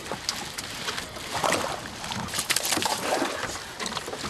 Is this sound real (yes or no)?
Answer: yes